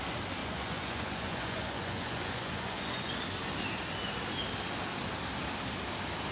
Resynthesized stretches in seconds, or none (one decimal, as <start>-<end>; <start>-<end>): 0.4-3.1